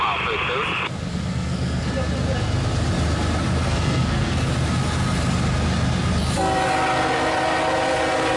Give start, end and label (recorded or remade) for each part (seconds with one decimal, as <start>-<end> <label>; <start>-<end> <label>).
0.0-1.1 recorded; 1.1-1.9 remade; 1.9-3.6 recorded; 3.6-4.5 remade; 4.5-8.4 recorded